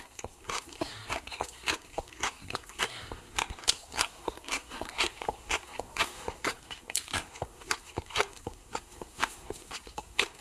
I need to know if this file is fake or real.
fake